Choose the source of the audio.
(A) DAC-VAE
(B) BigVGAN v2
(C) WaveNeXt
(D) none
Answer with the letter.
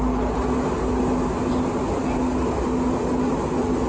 D